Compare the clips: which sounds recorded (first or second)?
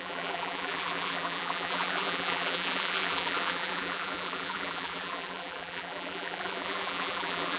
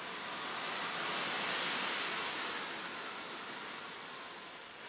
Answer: second